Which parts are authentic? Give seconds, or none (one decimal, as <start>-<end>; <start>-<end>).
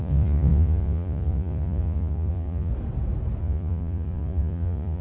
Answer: 2.7-3.4